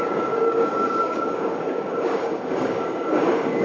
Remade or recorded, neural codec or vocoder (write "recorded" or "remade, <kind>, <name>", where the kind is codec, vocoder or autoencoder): remade, codec, DAC